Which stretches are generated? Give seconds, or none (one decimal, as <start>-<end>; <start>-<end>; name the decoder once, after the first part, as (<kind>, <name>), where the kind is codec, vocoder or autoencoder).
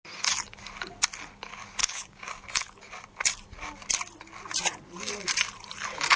1.8-2.3 (codec, DAC)